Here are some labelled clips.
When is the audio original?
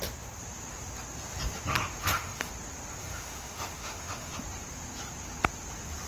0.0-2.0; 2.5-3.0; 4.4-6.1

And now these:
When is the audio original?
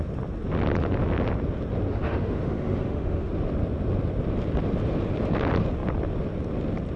0.0-1.9; 3.3-7.0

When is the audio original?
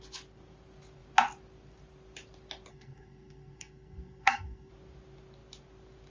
0.0-2.7; 4.7-6.1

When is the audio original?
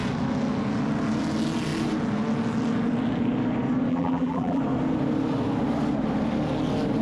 0.0-3.9; 4.6-7.0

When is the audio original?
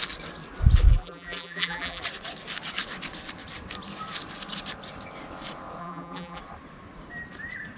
0.0-0.9; 2.0-5.8; 6.4-7.8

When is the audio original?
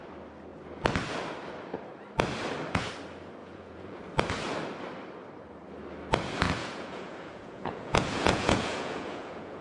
0.0-3.4; 4.0-6.6